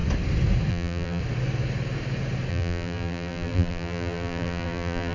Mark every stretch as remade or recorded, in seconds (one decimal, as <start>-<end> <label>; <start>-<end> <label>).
0.0-0.7 recorded; 0.7-1.2 remade; 1.2-2.5 recorded; 2.5-5.1 remade

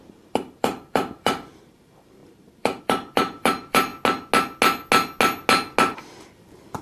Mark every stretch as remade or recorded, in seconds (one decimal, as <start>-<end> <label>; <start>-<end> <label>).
0.0-3.9 remade; 3.9-6.2 recorded; 6.2-6.8 remade

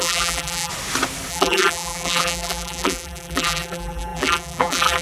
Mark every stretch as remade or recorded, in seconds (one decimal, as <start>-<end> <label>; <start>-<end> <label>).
0.0-0.7 remade; 0.7-1.3 recorded; 1.3-5.0 remade

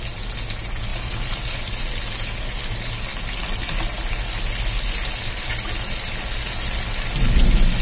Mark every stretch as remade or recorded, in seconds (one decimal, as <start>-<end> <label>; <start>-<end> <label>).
0.0-0.9 recorded; 0.9-2.0 remade; 2.0-3.1 recorded; 3.1-4.6 remade; 4.6-7.8 recorded

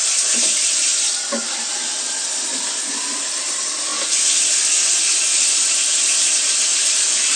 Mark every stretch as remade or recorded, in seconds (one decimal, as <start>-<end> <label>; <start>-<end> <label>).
0.0-3.9 remade; 3.9-4.7 recorded; 4.7-6.7 remade; 6.7-7.4 recorded

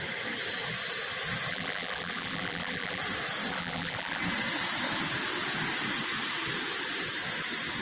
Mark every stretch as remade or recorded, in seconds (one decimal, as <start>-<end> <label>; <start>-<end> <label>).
0.0-1.5 recorded; 1.5-3.0 remade; 3.0-3.5 recorded; 3.5-4.2 remade; 4.2-7.8 recorded